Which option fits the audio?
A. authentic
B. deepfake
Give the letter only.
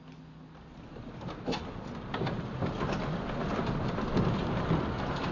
A